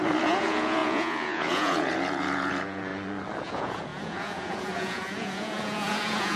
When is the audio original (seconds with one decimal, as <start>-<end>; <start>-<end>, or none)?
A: 2.9-3.4